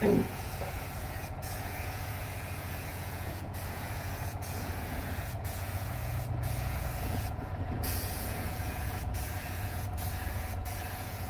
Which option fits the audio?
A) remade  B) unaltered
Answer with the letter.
A